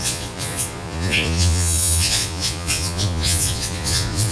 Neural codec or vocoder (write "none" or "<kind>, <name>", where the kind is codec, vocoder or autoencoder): vocoder, Vocos